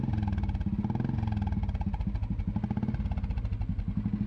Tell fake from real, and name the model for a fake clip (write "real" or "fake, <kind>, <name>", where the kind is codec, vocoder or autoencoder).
real